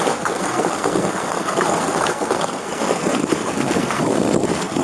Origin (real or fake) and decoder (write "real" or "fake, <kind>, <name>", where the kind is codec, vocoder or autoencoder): fake, codec, SNAC